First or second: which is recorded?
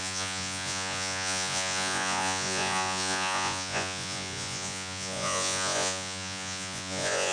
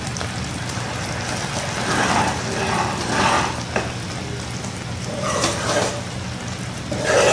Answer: second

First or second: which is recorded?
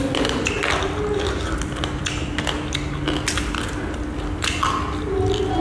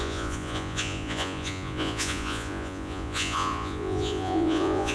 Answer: first